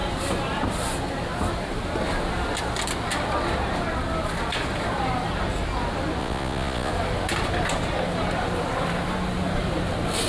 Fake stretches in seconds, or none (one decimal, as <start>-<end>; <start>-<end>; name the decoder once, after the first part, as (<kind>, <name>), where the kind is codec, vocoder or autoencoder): 6.2-6.9 (vocoder, Vocos)